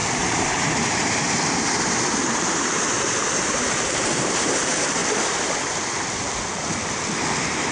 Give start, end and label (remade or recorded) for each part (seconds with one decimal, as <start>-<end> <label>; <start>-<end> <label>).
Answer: 0.0-5.0 remade; 5.0-7.7 recorded